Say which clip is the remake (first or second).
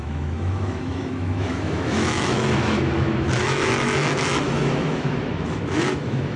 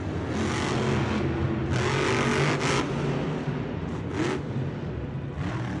first